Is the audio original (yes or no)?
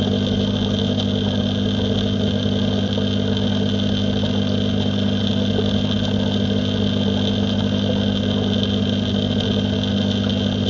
yes